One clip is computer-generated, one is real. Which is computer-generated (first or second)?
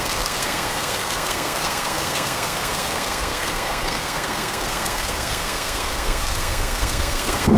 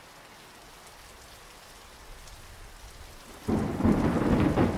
first